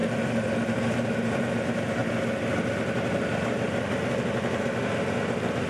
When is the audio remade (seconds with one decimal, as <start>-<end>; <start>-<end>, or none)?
0.0-2.0